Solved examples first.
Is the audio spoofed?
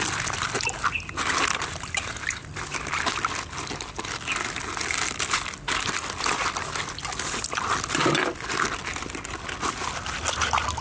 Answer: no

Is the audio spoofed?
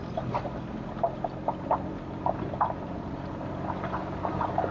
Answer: no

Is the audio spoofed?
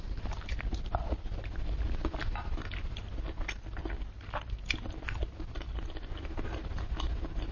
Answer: no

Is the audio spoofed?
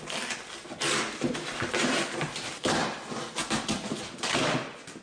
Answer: no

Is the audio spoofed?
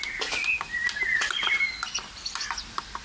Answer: no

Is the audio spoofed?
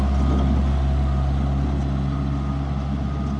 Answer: no